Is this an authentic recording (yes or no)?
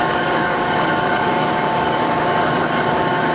no